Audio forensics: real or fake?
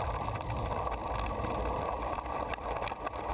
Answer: fake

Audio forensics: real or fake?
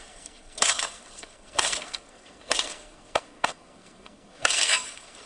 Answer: fake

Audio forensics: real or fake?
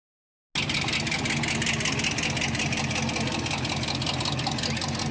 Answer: real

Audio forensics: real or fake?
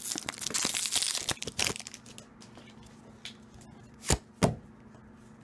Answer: real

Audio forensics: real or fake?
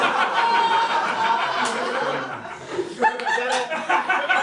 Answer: fake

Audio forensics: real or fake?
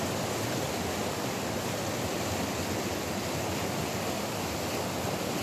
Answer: real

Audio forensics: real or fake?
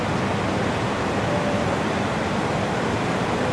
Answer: real